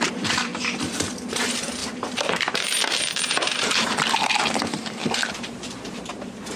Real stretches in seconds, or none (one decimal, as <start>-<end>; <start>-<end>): 0.5-1.3

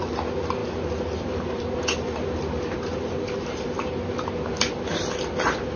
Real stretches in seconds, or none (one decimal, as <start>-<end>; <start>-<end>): 0.0-0.6; 4.1-5.8

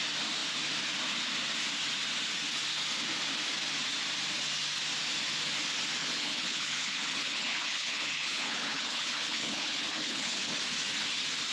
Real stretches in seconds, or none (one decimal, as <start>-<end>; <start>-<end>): 0.0-6.0; 10.6-11.5